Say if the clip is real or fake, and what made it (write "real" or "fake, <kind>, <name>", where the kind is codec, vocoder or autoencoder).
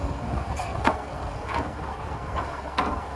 fake, codec, SNAC